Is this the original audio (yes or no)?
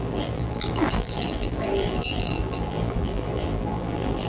no